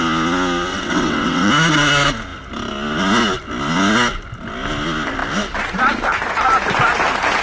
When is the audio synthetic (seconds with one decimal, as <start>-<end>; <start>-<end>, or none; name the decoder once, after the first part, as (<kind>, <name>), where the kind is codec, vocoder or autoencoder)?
0.7-1.5 (vocoder, WaveNeXt)